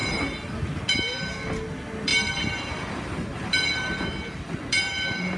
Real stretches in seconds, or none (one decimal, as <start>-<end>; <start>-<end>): 0.0-5.4